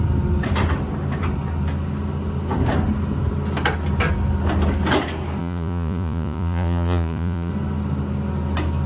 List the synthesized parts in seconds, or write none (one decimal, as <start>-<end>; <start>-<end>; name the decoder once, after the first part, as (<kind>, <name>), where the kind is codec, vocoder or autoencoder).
5.4-7.5 (vocoder, Vocos)